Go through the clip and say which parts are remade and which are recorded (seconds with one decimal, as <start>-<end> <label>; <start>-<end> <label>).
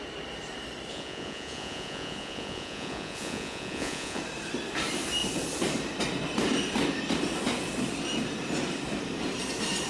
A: 0.0-0.9 recorded; 0.9-4.2 remade; 4.2-9.9 recorded